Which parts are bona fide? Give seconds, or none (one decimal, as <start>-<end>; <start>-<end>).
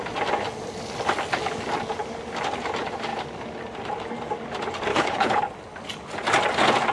0.0-4.9; 5.4-6.9